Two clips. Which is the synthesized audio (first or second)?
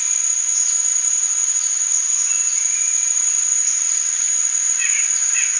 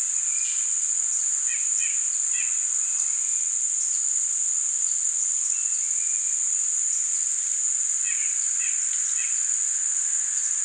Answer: first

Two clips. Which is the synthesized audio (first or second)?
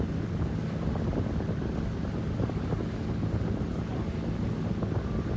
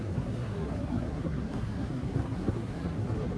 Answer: second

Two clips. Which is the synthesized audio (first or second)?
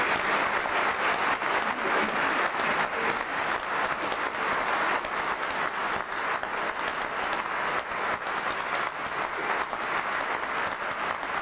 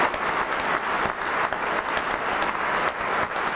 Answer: second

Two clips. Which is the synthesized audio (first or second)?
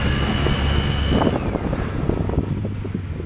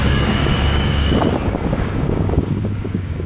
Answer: second